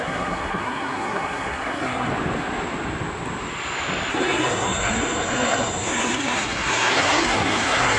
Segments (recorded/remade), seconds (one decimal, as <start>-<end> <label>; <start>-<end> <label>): 0.0-2.1 remade; 2.1-4.1 recorded; 4.1-8.0 remade